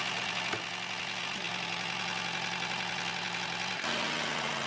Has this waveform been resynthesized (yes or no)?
no